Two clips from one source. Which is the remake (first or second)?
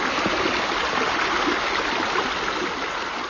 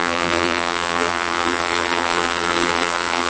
second